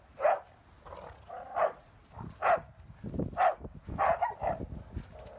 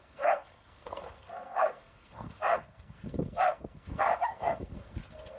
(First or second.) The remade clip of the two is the second